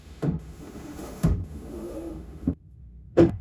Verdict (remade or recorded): remade